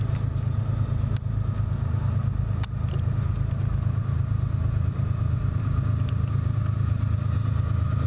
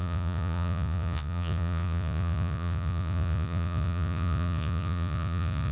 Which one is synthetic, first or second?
second